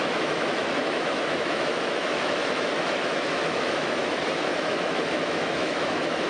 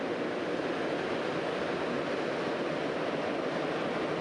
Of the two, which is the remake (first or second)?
first